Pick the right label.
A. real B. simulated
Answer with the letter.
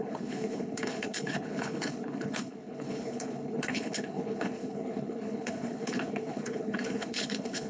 B